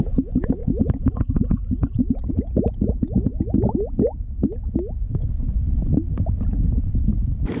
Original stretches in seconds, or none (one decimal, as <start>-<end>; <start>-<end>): 0.0-7.6